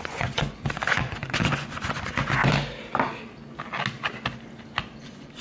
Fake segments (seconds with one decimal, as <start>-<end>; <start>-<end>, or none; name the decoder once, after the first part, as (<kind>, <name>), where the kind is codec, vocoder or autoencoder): 0.0-2.4 (vocoder, Vocos); 5.0-5.4